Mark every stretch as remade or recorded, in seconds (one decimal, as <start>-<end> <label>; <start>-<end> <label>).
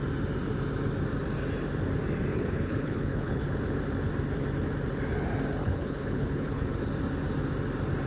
0.0-2.3 recorded; 2.3-3.5 remade; 3.5-5.6 recorded; 5.6-6.8 remade; 6.8-8.1 recorded